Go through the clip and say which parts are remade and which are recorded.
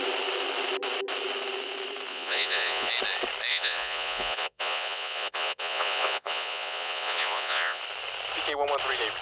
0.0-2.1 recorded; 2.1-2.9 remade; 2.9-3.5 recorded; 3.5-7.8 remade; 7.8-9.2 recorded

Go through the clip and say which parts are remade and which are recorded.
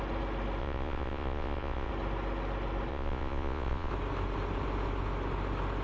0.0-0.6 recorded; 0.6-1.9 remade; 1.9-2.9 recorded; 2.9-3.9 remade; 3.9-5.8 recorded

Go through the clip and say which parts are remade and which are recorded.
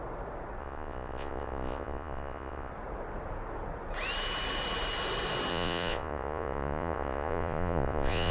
0.0-0.6 recorded; 0.6-2.7 remade; 2.7-5.5 recorded; 5.5-8.3 remade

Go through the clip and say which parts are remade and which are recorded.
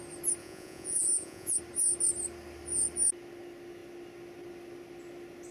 0.0-0.4 recorded; 0.4-1.6 remade; 1.6-5.5 recorded